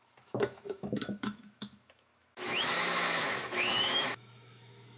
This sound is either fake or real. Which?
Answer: fake